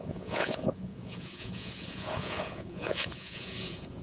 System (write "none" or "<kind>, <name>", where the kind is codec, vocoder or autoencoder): vocoder, Vocos